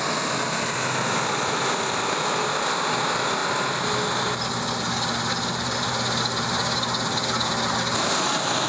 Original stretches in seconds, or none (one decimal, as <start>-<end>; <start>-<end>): 0.0-8.7